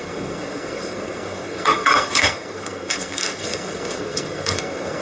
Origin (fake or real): fake